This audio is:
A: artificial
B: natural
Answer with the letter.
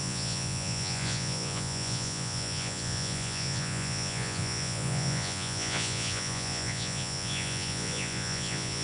A